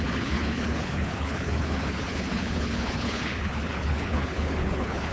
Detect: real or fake fake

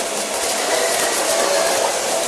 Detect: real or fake real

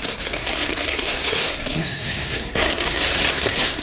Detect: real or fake fake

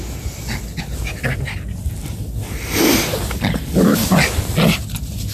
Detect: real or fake real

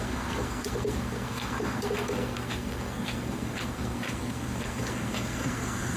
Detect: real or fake fake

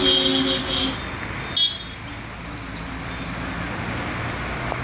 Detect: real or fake real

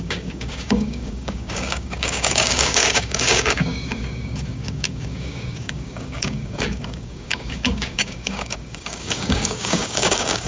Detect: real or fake fake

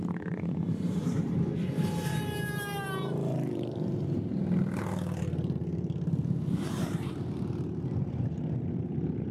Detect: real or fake fake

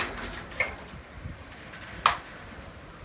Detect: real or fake real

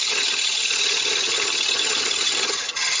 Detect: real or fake fake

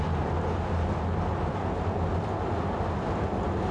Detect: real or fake real